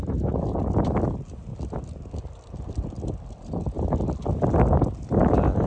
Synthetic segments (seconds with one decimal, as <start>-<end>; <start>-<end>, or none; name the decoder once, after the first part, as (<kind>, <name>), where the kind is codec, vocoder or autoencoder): none